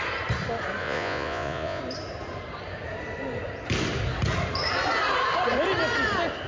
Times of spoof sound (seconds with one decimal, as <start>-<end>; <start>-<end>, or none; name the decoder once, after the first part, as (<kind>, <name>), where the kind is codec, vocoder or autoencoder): 0.8-1.8 (vocoder, Vocos)